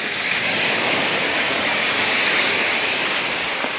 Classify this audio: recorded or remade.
remade